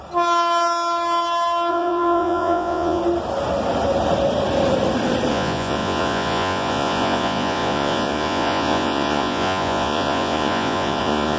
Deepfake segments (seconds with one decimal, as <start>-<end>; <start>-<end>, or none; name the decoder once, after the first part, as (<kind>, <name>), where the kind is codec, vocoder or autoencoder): 1.7-3.0 (vocoder, Vocos); 5.3-11.4